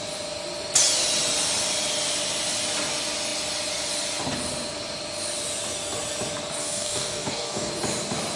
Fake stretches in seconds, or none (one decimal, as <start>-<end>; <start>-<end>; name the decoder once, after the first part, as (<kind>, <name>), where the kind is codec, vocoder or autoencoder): 6.6-7.7 (codec, DAC)